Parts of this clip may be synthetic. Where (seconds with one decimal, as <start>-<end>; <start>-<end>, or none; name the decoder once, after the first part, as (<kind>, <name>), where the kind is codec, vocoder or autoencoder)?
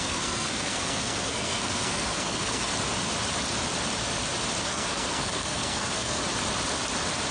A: 0.0-2.7 (codec, SNAC); 4.6-6.2